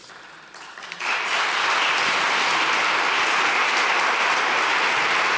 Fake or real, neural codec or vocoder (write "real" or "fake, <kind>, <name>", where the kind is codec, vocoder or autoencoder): real